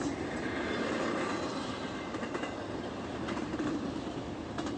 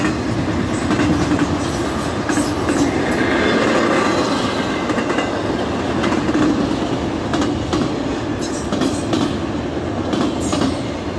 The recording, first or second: second